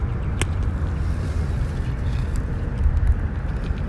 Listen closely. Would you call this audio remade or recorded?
recorded